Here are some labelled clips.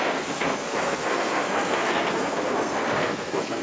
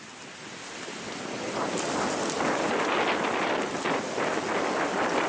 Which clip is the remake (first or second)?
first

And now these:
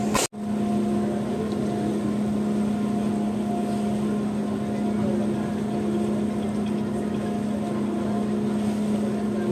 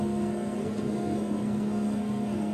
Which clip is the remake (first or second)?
second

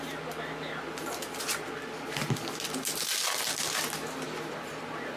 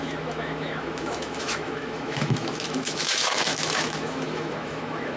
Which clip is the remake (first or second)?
second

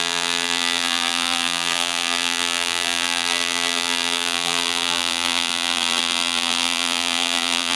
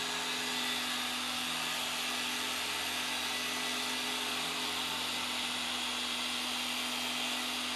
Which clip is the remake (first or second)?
first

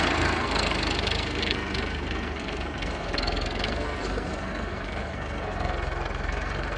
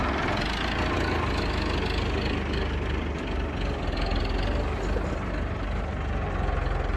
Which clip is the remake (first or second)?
first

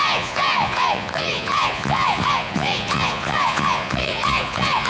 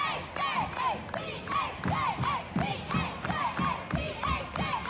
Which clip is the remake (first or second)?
first